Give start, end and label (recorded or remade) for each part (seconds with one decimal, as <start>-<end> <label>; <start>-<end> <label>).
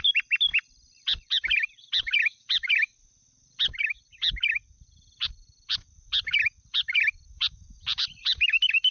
0.0-8.9 remade